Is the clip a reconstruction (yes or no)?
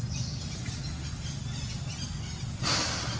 no